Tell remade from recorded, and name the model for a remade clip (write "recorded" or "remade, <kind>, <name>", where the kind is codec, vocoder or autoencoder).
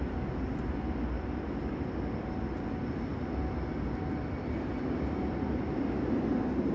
recorded